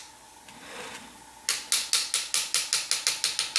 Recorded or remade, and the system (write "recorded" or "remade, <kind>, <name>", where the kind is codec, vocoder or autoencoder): recorded